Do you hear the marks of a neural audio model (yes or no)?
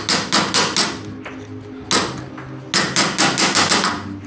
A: no